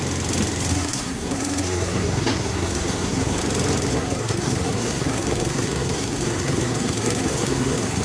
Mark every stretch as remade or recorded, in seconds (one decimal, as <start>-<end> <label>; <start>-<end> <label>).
0.0-0.7 recorded; 0.7-3.4 remade; 3.4-3.9 recorded; 3.9-8.0 remade